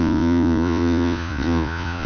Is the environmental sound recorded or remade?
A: remade